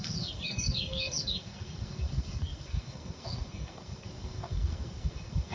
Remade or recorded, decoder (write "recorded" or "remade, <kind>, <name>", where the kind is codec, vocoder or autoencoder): remade, codec, SNAC